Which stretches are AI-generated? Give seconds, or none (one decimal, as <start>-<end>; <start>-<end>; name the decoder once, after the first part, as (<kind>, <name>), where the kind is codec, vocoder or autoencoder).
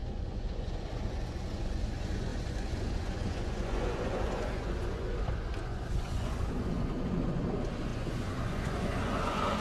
0.0-9.6 (vocoder, Vocos)